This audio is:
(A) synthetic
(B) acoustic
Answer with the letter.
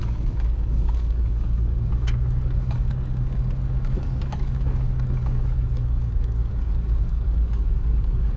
A